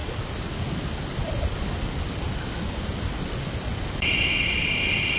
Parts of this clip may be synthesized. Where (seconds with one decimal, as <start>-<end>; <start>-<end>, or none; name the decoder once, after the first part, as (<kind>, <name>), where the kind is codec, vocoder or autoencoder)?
none